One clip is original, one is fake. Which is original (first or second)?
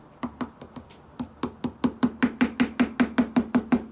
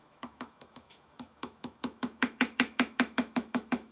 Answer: first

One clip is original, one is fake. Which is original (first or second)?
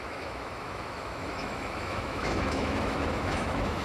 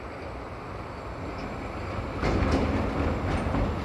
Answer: second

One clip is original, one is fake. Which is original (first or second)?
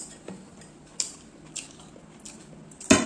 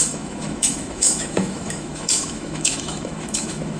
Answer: first